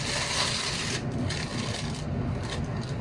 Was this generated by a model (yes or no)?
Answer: no